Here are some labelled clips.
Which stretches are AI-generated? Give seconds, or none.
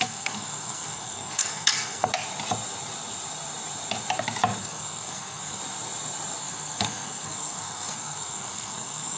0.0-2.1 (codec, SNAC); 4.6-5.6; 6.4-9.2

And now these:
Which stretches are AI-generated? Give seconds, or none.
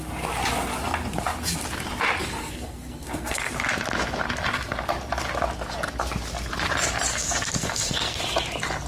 2.4-3.5 (codec, SNAC); 7.1-8.2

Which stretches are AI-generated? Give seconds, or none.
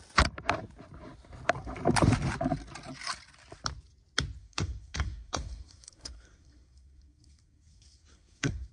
4.4-8.7 (codec, SNAC)